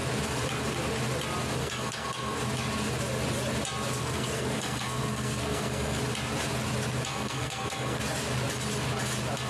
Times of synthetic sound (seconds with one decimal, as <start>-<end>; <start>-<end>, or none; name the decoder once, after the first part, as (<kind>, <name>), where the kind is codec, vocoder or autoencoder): 1.6-2.4 (codec, SNAC); 4.0-6.0; 7.1-8.0